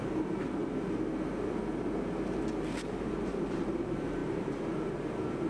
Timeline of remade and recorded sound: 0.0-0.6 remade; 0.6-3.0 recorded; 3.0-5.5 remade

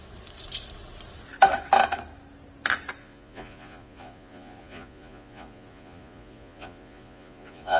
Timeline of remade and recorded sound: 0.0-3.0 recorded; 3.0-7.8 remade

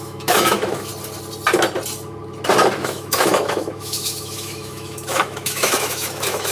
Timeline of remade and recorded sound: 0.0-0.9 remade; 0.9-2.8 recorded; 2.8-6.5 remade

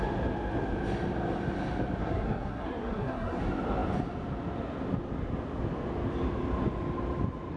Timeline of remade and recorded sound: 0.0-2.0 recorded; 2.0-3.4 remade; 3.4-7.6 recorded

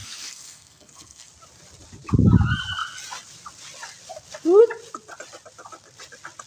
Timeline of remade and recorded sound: 0.0-1.3 remade; 1.3-6.5 recorded

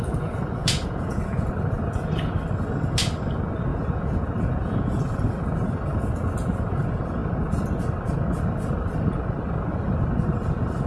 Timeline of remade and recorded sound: 0.0-0.6 recorded; 0.6-1.5 remade; 1.5-3.7 recorded; 3.7-5.0 remade; 5.0-10.9 recorded

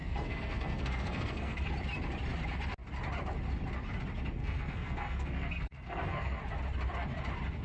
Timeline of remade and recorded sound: 0.0-1.7 remade; 1.7-4.4 recorded; 4.4-6.4 remade; 6.4-7.6 recorded

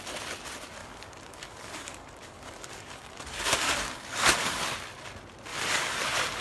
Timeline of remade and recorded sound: 0.0-0.8 recorded; 0.8-4.6 remade; 4.6-5.5 recorded; 5.5-6.4 remade